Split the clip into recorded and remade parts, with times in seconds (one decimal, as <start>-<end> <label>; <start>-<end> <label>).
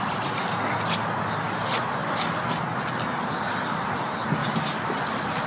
0.0-2.0 recorded; 2.0-2.6 remade; 2.6-4.4 recorded; 4.4-5.1 remade; 5.1-5.5 recorded